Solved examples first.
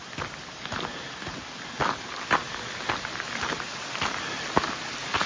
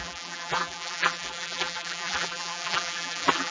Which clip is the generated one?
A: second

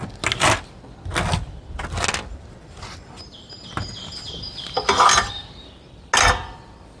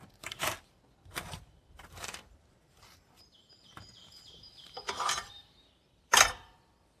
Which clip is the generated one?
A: second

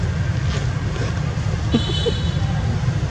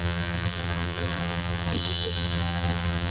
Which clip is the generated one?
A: second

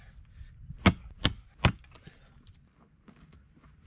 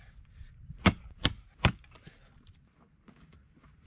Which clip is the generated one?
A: second